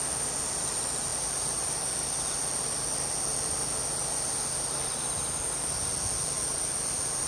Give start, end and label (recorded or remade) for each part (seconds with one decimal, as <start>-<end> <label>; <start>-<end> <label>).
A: 0.0-7.3 recorded